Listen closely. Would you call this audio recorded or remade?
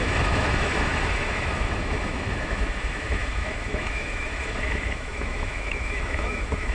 remade